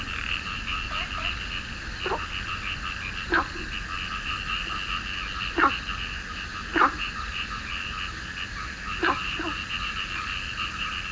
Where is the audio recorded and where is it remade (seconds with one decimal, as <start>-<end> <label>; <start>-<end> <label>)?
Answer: 0.0-11.1 recorded